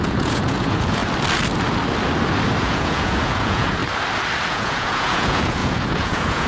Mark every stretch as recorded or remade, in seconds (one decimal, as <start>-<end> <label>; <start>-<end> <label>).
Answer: 0.0-1.0 remade; 1.0-2.6 recorded; 2.6-3.8 remade; 3.8-4.5 recorded; 4.5-6.5 remade